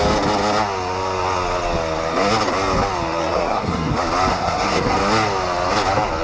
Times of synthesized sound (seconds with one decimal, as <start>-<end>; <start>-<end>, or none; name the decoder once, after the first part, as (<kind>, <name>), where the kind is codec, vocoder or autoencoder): 3.2-3.9 (codec, SNAC); 4.3-4.9